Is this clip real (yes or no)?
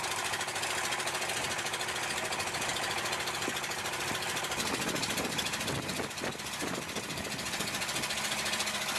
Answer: yes